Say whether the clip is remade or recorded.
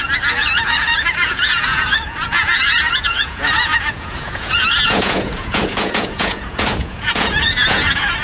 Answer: remade